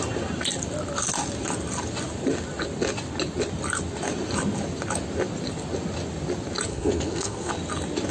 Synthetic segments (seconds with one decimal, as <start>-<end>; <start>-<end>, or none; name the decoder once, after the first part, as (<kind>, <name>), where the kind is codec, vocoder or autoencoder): 6.7-7.5 (codec, SNAC)